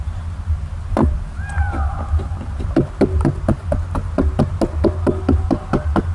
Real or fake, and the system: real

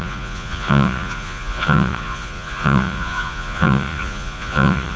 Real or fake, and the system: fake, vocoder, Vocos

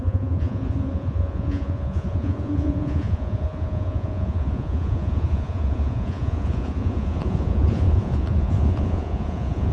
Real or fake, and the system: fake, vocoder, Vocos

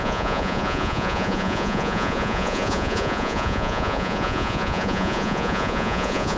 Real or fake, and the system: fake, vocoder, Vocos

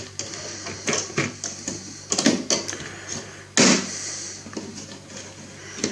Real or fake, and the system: real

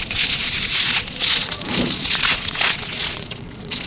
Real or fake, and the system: fake, vocoder, Vocos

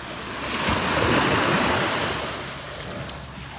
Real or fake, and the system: real